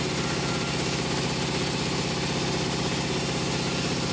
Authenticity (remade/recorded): recorded